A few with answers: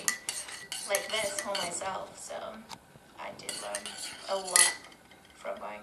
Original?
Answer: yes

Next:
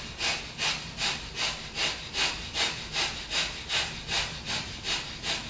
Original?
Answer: yes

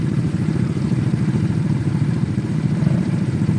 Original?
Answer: no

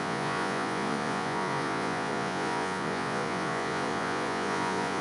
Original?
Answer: no